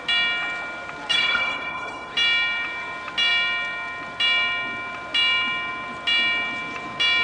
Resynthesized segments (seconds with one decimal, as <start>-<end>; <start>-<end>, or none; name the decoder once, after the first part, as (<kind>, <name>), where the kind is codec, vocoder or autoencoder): 1.1-2.1 (codec, HILCodec)